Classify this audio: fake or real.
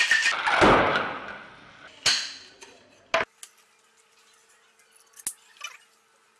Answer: real